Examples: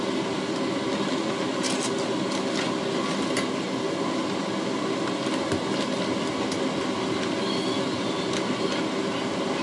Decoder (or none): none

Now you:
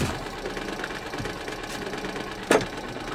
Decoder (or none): none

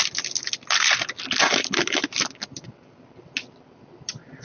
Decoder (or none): none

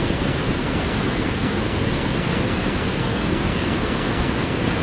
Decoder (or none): codec, SNAC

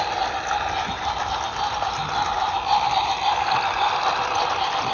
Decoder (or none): none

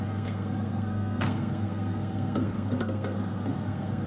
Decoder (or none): codec, SNAC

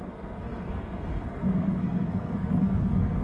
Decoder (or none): codec, SNAC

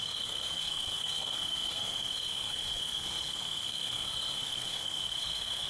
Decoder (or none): codec, SNAC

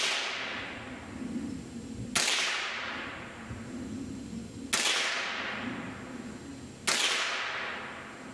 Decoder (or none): none